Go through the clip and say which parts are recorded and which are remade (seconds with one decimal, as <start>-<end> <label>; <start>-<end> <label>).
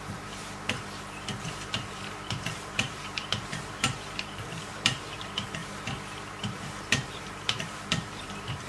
0.0-5.6 remade; 5.6-6.6 recorded; 6.6-8.7 remade